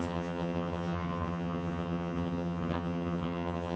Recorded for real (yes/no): no